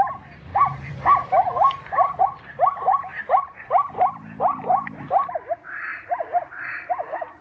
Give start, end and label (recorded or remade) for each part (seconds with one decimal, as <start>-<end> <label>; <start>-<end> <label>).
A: 0.0-0.5 recorded; 0.5-2.2 remade; 2.2-3.1 recorded; 3.1-5.1 remade; 5.1-5.9 recorded; 5.9-6.9 remade; 6.9-7.4 recorded